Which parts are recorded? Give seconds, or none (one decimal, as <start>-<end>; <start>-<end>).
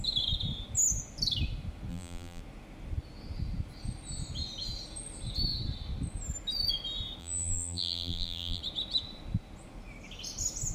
0.0-1.9; 2.4-7.2; 8.6-10.7